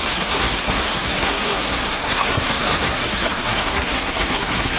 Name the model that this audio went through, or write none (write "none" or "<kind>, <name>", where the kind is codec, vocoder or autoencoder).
codec, SNAC